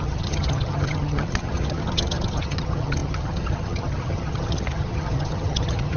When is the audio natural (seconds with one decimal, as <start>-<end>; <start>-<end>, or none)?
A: none